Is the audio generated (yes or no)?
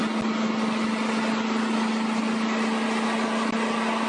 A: no